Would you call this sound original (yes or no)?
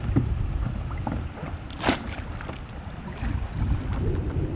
yes